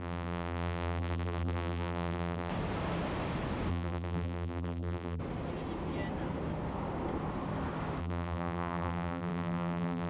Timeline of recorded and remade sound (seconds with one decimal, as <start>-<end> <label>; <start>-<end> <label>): 0.0-2.5 remade; 2.5-3.7 recorded; 3.7-5.2 remade; 5.2-8.0 recorded; 8.0-10.1 remade